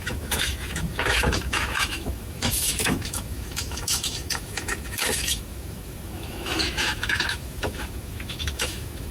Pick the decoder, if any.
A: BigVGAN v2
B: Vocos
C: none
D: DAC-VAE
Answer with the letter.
D